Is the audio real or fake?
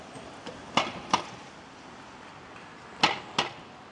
real